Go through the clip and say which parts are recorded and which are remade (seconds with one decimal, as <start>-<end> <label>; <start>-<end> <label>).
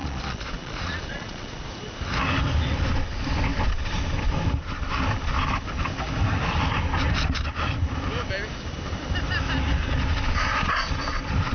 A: 0.0-1.7 remade; 1.7-11.5 recorded